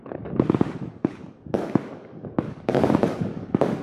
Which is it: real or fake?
fake